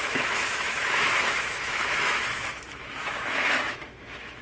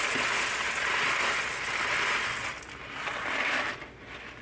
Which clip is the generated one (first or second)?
first